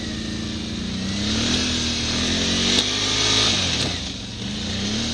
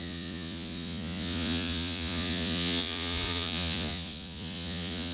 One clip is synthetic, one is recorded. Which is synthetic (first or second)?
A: second